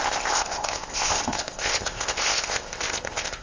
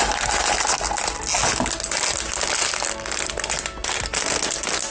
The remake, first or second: first